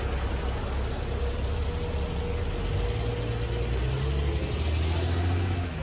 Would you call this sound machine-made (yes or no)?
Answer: no